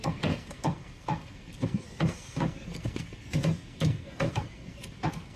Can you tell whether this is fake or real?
fake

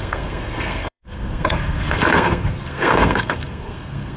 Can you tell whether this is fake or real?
fake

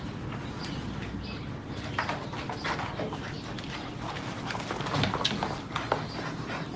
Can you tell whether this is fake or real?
real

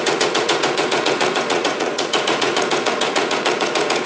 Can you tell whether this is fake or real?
fake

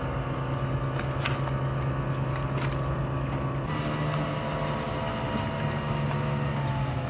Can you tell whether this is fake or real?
real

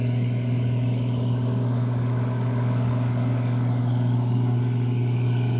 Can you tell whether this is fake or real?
fake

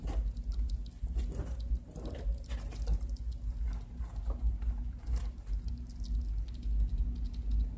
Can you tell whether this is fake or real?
real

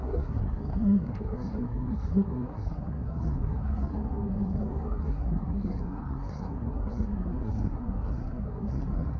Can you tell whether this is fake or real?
fake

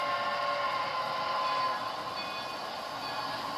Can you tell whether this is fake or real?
real